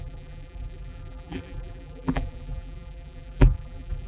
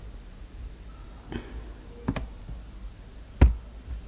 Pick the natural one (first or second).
second